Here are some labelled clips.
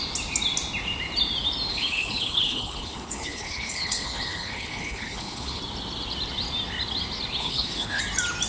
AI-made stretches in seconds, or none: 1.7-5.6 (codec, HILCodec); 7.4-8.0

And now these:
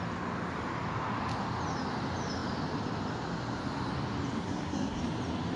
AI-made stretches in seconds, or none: 4.4-5.0 (codec, SNAC)